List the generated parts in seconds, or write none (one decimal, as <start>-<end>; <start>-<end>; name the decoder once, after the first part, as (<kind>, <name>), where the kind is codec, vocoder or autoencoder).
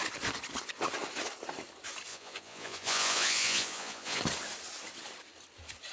2.1-4.2 (vocoder, Vocos)